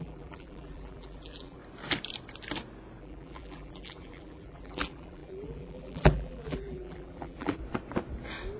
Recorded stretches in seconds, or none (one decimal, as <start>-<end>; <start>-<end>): 1.6-3.0; 7.6-8.6